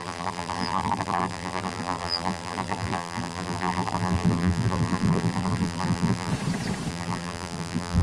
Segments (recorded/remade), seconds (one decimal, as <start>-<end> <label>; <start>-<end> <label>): 0.0-6.3 remade; 6.3-6.9 recorded; 6.9-8.0 remade